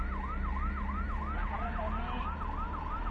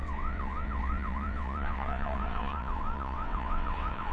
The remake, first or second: second